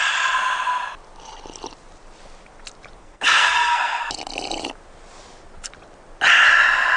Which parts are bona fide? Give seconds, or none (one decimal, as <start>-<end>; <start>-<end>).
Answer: 0.0-3.0; 4.0-7.0